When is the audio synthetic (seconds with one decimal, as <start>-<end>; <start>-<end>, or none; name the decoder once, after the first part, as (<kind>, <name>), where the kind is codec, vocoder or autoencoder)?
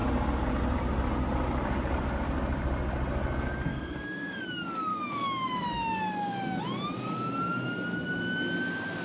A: 3.7-4.4 (codec, DAC); 4.9-6.6